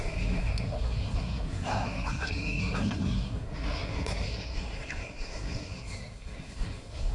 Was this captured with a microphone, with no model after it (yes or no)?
no